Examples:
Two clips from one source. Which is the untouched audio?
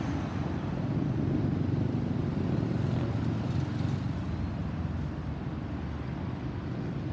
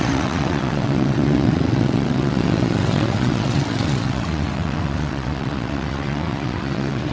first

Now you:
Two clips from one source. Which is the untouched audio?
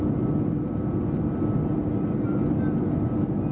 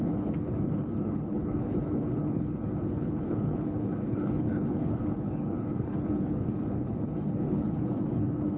first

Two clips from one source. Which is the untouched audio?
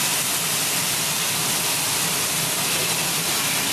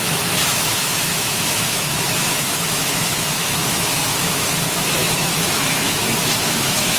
first